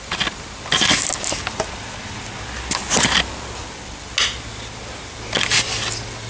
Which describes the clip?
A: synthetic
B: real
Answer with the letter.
B